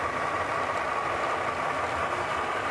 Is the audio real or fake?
real